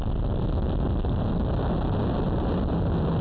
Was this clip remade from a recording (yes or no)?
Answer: no